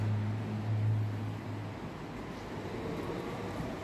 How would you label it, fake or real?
real